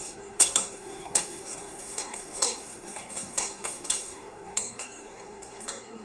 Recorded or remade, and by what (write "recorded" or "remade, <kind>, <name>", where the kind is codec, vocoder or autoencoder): remade, codec, SNAC